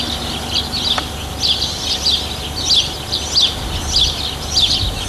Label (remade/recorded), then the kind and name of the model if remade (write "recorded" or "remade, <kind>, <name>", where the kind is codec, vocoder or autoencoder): recorded